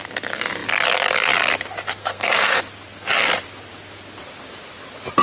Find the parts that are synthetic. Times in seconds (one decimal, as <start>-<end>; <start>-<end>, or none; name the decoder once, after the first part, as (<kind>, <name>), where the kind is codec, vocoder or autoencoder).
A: 2.0-2.6 (codec, SNAC)